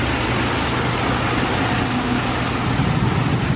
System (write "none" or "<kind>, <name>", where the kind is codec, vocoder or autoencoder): none